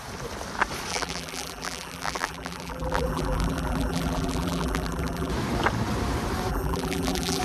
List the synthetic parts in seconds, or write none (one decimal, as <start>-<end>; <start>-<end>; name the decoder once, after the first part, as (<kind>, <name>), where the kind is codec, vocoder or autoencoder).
0.9-5.3 (vocoder, BigVGAN v2); 6.5-7.4